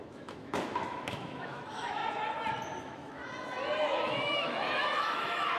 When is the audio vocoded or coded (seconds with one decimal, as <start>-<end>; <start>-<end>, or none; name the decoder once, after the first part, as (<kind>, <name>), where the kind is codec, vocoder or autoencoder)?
0.0-2.0 (autoencoder, DAC-VAE); 2.8-3.2; 3.8-5.6